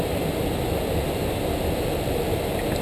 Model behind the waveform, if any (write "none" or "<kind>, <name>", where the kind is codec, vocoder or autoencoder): vocoder, BigVGAN v2